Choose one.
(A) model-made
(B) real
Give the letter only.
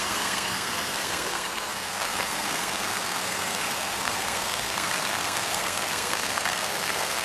A